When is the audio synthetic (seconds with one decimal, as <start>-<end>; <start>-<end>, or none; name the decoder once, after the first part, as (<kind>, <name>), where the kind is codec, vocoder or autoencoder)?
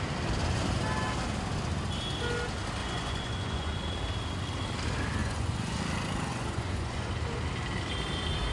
2.8-3.8 (vocoder, Vocos); 5.2-5.8; 6.3-7.1